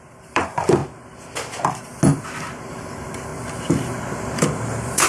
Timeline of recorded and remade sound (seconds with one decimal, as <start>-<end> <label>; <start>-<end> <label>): 0.0-0.8 remade; 0.8-2.7 recorded; 2.7-3.3 remade; 3.3-4.4 recorded; 4.4-5.1 remade